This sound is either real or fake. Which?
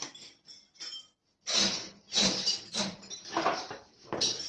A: real